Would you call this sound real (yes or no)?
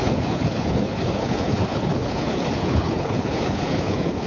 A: no